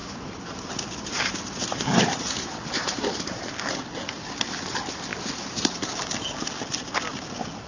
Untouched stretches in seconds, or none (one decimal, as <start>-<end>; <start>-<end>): 3.5-5.1; 5.7-7.7